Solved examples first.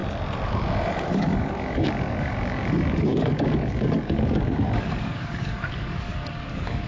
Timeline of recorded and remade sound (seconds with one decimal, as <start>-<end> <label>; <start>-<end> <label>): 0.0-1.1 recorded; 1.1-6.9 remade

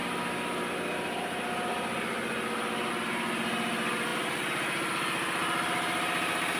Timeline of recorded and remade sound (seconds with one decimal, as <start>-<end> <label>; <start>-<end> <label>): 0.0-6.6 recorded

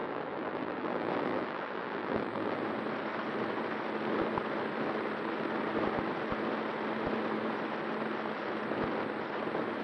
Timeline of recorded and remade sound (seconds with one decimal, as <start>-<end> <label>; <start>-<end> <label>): 0.0-2.6 remade; 2.6-9.8 recorded